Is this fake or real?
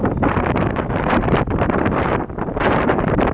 fake